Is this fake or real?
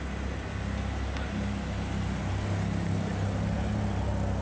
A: real